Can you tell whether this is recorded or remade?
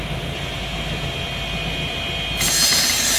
recorded